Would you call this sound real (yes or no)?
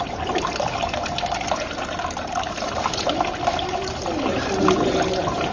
yes